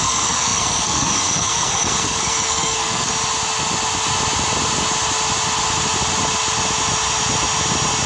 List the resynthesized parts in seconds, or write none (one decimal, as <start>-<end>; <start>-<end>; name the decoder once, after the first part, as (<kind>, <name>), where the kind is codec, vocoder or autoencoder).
0.0-3.1 (codec, SNAC)